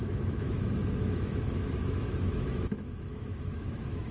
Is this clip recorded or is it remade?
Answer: remade